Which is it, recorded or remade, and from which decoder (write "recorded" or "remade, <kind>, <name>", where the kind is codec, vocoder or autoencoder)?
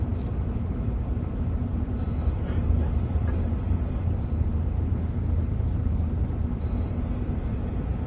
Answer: remade, vocoder, BigVGAN v2